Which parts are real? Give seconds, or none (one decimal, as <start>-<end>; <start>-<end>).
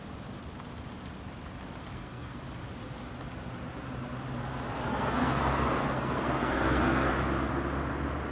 0.0-1.8; 2.4-4.9; 7.1-8.3